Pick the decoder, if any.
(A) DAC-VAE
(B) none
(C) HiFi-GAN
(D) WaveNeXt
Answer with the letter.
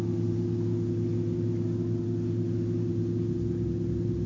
B